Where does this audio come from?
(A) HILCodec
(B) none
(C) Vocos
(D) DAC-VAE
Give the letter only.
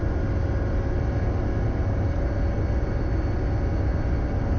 B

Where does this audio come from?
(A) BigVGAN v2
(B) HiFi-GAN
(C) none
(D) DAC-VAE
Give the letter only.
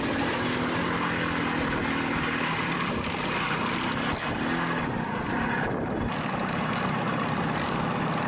C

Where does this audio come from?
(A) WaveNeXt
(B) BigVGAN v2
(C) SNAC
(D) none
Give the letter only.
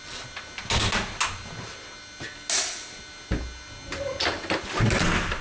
D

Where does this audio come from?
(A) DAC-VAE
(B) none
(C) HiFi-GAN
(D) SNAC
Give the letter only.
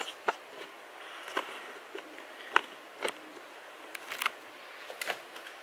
B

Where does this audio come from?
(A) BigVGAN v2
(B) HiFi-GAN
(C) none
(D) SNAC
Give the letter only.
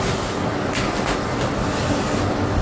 C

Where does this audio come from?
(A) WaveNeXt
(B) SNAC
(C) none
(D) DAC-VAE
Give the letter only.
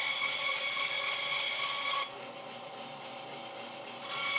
C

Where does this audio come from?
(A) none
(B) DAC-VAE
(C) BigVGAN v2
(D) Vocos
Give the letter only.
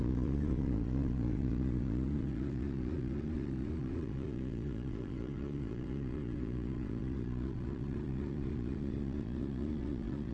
D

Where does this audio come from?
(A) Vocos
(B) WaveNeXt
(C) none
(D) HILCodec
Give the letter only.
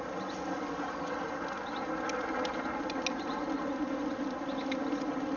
C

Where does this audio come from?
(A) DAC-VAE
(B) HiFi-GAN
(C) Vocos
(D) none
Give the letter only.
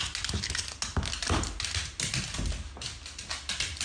D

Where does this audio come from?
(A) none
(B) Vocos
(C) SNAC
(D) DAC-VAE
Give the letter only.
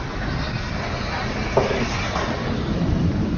A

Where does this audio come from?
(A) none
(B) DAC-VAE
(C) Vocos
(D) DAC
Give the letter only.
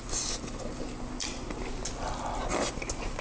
A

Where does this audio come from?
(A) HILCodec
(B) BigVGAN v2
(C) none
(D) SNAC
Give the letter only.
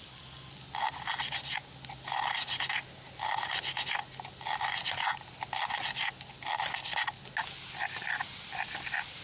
C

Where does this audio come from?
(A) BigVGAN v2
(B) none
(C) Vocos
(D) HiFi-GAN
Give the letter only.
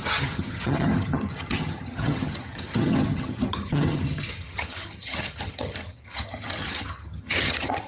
D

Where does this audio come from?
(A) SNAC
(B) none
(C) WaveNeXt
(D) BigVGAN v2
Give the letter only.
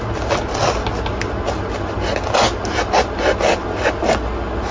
B